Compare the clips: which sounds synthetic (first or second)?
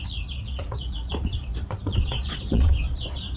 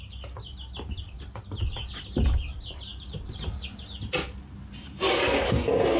first